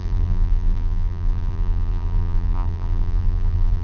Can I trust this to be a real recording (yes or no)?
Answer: no